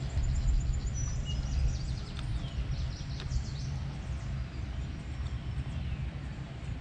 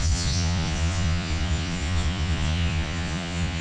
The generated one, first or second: second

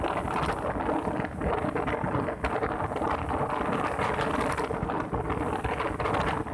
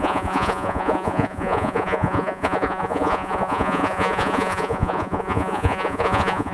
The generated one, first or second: second